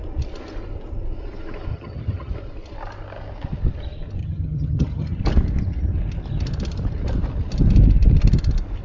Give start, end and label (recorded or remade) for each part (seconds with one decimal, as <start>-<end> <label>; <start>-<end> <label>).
0.0-1.7 recorded; 1.7-2.3 remade; 2.3-4.2 recorded; 4.2-5.2 remade; 5.2-8.8 recorded